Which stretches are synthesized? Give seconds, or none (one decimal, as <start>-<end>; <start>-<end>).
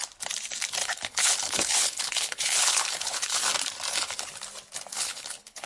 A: 0.8-3.5; 4.9-5.7